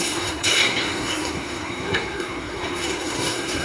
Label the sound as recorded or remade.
remade